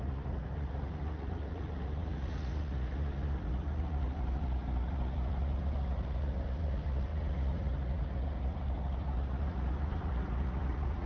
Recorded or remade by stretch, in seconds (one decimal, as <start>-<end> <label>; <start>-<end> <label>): 0.0-11.1 remade